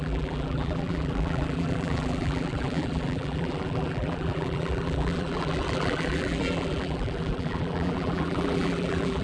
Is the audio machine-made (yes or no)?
yes